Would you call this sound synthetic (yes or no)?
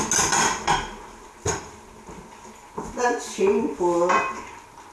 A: no